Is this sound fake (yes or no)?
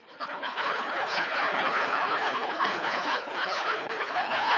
yes